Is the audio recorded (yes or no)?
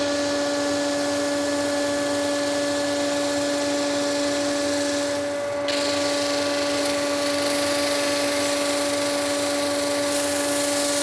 yes